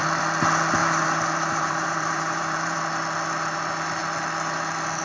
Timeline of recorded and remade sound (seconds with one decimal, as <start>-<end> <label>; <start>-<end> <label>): 0.0-0.8 recorded; 0.8-2.8 remade; 2.8-5.0 recorded